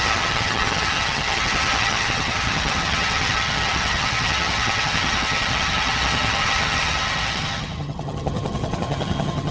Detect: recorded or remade remade